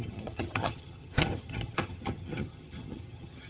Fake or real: fake